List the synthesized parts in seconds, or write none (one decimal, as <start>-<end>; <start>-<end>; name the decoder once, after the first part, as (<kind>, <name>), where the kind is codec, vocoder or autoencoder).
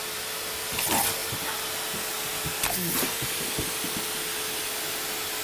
none